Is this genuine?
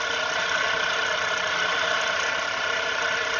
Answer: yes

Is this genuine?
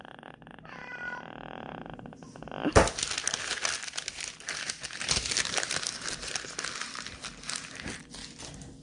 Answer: yes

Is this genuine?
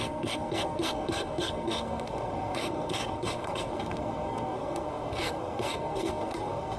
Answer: no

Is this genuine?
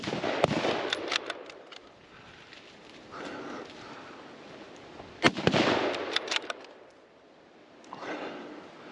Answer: yes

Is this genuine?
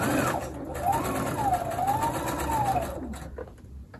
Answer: yes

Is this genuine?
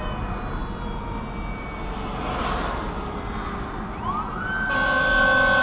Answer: yes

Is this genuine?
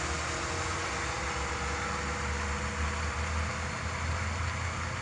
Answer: yes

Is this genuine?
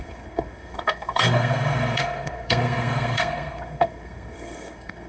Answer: no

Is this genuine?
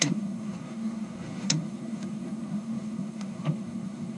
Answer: no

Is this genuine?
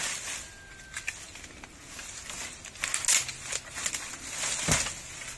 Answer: yes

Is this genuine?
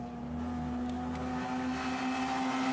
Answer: yes